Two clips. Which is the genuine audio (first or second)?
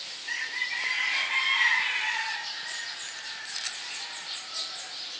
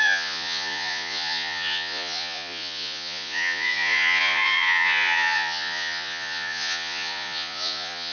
first